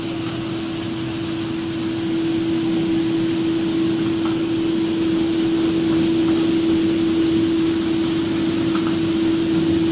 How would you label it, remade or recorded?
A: recorded